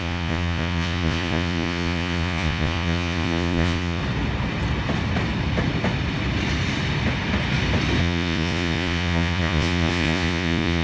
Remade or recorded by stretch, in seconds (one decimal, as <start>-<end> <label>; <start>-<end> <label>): 0.0-4.0 remade; 4.0-8.0 recorded; 8.0-10.8 remade